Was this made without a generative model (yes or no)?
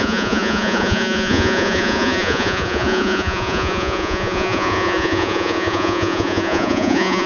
no